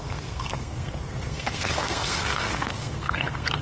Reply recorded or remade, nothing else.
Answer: remade